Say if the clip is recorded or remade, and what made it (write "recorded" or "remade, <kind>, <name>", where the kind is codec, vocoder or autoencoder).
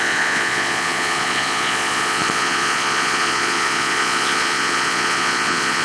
remade, vocoder, Vocos